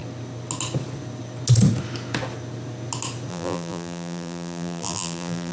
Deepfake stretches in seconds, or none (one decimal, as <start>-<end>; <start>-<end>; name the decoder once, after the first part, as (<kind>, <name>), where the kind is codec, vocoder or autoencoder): 3.3-5.5 (vocoder, BigVGAN v2)